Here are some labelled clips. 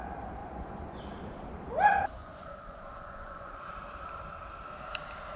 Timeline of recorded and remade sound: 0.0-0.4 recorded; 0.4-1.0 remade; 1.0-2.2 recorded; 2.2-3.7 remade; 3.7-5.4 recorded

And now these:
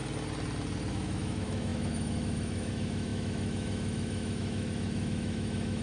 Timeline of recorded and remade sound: 0.0-0.9 recorded; 0.9-5.8 remade

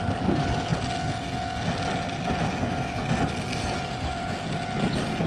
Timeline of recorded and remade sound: 0.0-5.3 recorded

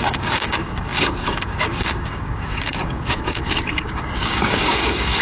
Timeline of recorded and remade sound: 0.0-5.2 remade

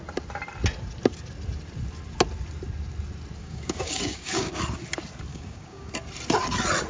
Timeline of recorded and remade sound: 0.0-3.4 recorded; 3.4-4.6 remade; 4.6-5.3 recorded; 5.3-5.9 remade; 5.9-6.9 recorded

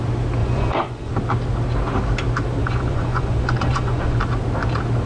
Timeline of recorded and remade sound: 0.0-0.4 recorded; 0.4-1.1 remade; 1.1-2.6 recorded; 2.6-4.2 remade; 4.2-5.1 recorded

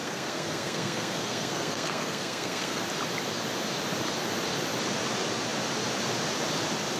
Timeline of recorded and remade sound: 0.0-2.8 remade; 2.8-7.0 recorded